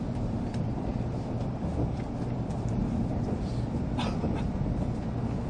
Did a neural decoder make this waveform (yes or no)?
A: yes